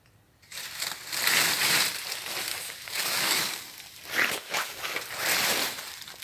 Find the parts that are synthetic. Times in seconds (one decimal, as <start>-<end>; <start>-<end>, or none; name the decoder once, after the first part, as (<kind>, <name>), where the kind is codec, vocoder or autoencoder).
2.5-3.6 (codec, DAC); 4.4-5.0